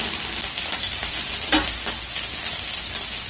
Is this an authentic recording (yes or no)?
yes